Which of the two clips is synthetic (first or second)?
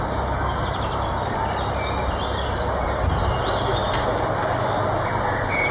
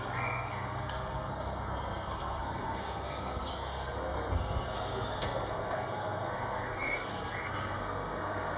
second